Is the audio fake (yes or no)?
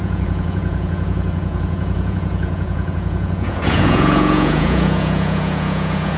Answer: yes